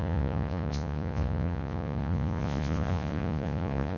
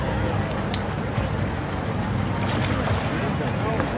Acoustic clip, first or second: second